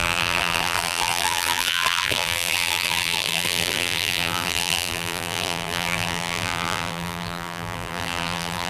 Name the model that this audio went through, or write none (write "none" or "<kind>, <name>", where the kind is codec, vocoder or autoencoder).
vocoder, BigVGAN v2